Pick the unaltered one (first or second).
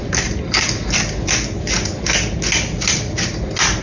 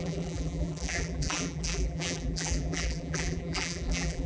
first